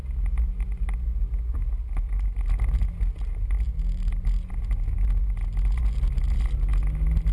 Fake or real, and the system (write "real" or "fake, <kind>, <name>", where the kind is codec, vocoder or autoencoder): real